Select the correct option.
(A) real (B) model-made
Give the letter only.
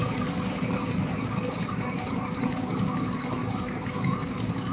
B